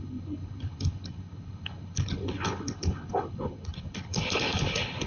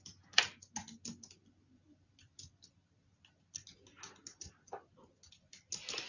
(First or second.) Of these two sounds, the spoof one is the first